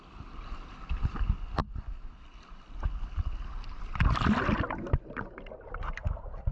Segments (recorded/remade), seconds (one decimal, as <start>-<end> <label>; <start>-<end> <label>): 0.0-6.5 recorded